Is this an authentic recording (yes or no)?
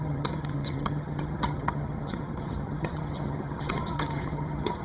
no